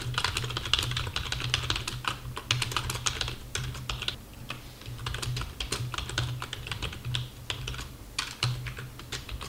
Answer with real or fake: real